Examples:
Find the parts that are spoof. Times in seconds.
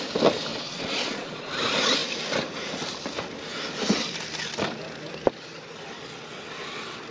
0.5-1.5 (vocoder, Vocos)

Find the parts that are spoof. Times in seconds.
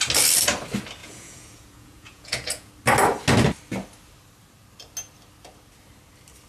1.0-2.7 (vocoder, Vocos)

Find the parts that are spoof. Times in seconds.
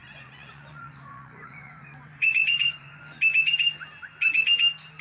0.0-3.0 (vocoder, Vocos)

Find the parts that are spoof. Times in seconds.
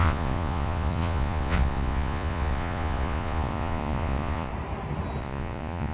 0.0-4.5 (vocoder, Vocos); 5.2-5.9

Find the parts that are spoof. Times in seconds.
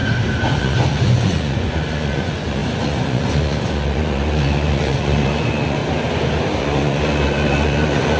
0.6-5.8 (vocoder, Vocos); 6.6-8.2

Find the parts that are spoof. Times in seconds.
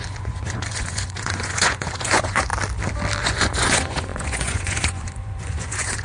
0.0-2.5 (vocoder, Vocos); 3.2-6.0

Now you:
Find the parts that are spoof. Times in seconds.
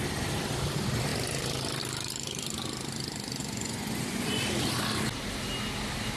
3.4-4.4 (vocoder, Vocos)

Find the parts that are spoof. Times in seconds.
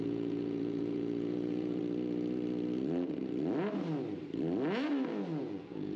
0.0-1.8 (vocoder, Vocos); 5.4-6.0